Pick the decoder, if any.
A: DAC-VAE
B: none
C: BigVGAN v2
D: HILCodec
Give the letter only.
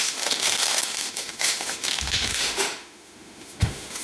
A